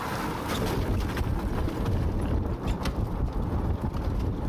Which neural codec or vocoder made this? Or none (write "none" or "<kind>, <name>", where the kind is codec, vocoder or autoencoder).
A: none